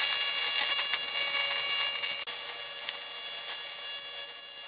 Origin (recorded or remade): recorded